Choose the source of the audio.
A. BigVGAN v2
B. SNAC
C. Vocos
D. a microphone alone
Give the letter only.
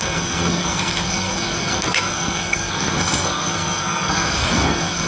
B